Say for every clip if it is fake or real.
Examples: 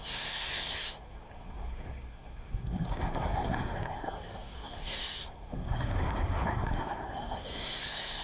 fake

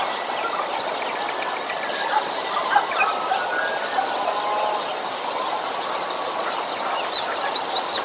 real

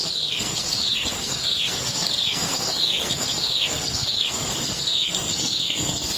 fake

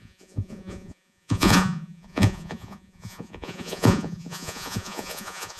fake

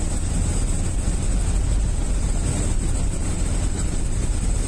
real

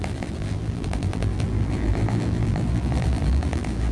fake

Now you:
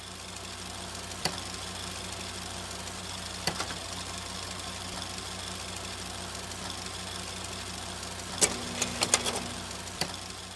real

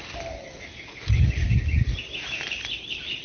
real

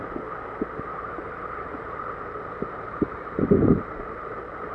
real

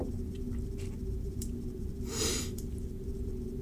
fake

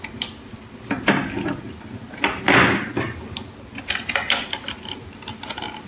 real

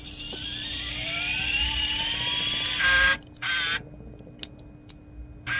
real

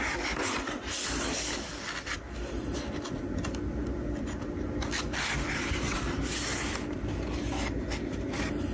real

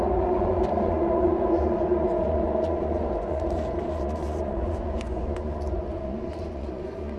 fake